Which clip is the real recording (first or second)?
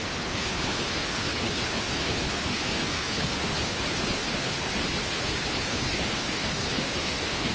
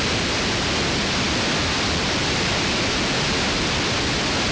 second